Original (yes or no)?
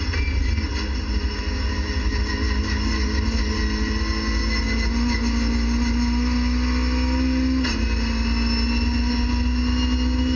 yes